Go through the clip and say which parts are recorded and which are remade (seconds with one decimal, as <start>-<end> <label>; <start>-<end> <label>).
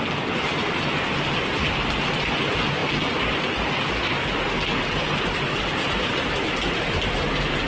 0.0-7.7 recorded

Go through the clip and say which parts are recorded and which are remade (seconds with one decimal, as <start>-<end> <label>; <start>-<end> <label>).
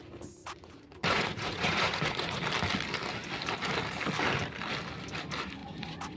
0.0-0.4 recorded; 0.4-2.4 remade; 2.4-5.6 recorded; 5.6-6.2 remade